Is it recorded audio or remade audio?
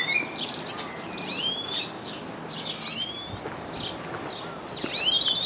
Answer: recorded